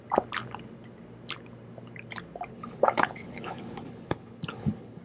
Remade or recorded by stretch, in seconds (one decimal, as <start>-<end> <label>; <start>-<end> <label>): 0.0-2.5 recorded; 2.5-5.0 remade

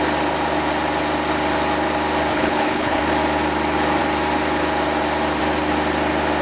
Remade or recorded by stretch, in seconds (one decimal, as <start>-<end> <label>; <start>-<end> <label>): 0.0-2.3 recorded; 2.3-3.0 remade; 3.0-6.4 recorded

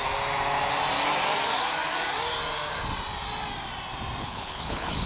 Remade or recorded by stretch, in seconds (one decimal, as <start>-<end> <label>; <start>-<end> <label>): 0.0-4.2 recorded; 4.2-5.1 remade

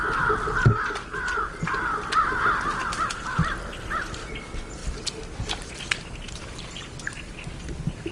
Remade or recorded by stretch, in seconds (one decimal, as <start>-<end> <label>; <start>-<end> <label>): 0.0-8.1 recorded

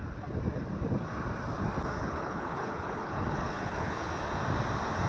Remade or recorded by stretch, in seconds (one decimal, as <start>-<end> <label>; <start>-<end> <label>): 0.0-2.0 recorded; 2.0-4.1 remade; 4.1-5.1 recorded